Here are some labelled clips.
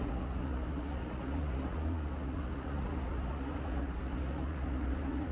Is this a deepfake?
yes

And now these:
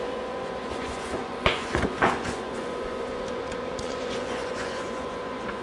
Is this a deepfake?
yes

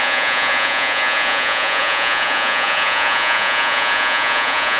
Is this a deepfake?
yes